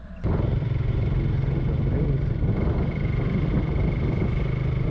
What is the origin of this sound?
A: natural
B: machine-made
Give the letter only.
B